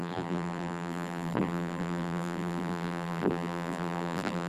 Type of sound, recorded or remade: remade